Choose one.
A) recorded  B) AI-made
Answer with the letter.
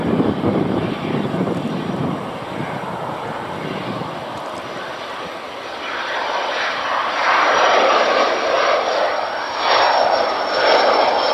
B